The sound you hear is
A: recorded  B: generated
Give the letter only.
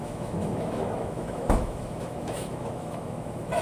B